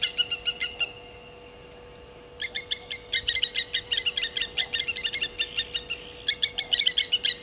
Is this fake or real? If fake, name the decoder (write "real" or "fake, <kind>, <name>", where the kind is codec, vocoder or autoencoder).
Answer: real